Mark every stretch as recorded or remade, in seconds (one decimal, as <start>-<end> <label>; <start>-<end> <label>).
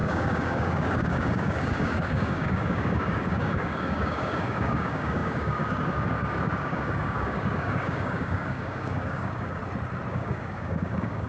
0.0-9.6 remade; 9.6-10.1 recorded; 10.1-11.3 remade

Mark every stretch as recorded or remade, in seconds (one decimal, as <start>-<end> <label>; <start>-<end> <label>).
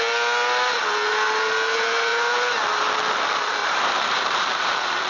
0.0-3.6 recorded; 3.6-5.1 remade